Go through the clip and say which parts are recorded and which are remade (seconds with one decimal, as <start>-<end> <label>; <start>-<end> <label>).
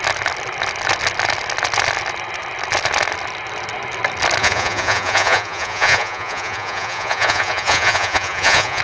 0.0-4.4 recorded; 4.4-8.8 remade